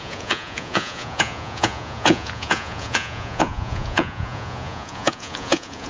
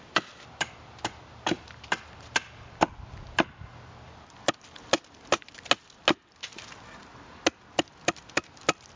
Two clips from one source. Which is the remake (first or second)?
first